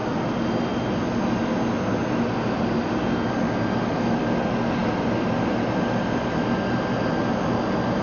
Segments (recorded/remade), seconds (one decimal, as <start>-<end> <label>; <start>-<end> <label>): 0.0-8.0 recorded